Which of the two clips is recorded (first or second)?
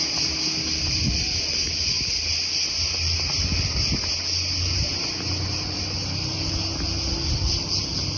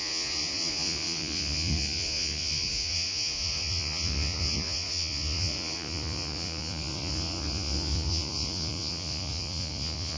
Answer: first